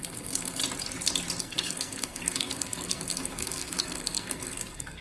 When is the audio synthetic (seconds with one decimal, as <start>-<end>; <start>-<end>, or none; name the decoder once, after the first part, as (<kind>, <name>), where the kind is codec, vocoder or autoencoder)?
0.0-0.6 (codec, SNAC); 1.4-5.0